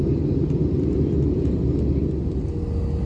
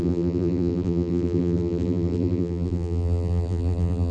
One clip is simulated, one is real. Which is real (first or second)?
first